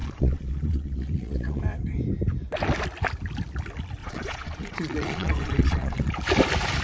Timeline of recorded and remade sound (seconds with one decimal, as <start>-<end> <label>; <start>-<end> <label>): 0.0-1.6 remade; 1.6-4.0 recorded; 4.0-6.1 remade; 6.1-6.8 recorded